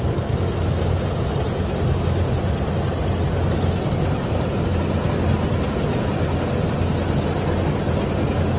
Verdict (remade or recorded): recorded